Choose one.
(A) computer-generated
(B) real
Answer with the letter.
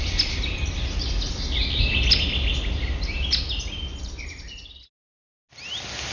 B